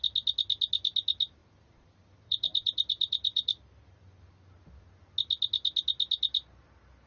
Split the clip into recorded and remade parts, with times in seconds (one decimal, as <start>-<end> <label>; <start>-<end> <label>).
0.0-1.4 recorded; 1.4-4.8 remade; 4.8-7.1 recorded